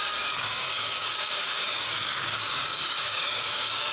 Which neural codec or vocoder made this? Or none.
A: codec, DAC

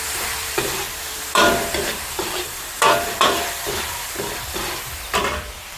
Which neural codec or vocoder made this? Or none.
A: vocoder, BigVGAN v2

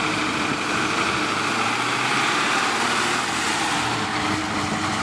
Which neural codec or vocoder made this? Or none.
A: none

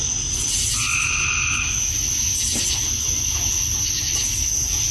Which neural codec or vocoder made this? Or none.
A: none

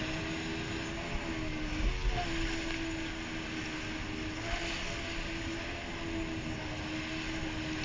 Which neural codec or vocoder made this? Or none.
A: none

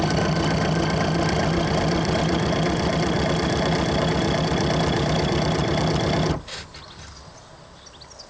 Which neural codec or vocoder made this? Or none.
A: none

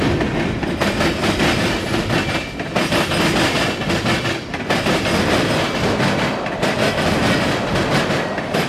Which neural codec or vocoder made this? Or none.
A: none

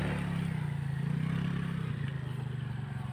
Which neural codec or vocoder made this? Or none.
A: none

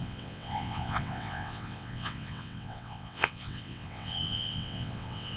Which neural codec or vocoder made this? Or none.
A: vocoder, WaveNeXt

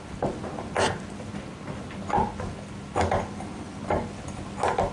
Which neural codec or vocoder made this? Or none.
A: none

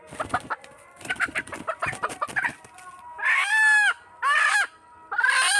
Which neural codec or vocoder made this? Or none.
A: none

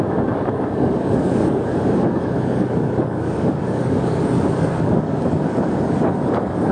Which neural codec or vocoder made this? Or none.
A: codec, DAC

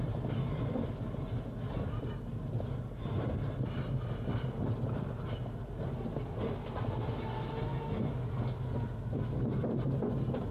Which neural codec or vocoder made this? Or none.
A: none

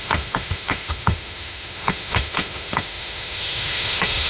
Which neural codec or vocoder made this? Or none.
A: autoencoder, DAC-VAE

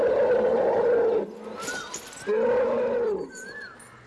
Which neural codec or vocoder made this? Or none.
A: none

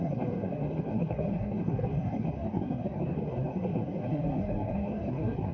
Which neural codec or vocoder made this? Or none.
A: codec, SNAC